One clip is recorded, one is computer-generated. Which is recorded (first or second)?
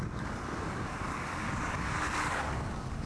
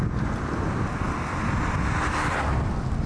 second